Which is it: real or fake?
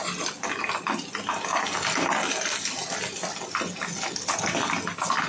real